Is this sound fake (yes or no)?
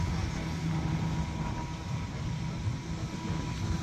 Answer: no